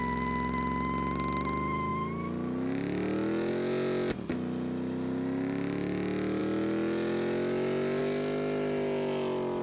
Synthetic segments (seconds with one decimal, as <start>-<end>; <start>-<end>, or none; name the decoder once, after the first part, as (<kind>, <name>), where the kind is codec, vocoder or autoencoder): none